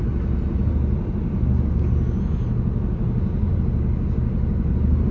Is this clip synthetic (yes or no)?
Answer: no